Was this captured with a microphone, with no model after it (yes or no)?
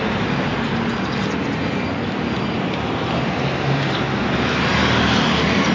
yes